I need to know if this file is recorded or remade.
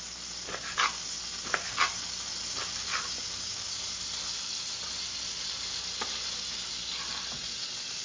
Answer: recorded